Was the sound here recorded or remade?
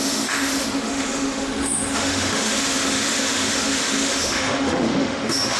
remade